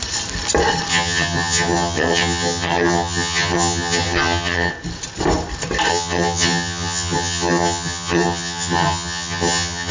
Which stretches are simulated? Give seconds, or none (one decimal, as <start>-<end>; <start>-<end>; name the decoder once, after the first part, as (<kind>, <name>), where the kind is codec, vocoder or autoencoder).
0.9-4.7 (vocoder, HiFi-GAN); 5.9-9.9